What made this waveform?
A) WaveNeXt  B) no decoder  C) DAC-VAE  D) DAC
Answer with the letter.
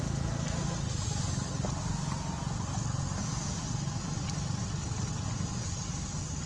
B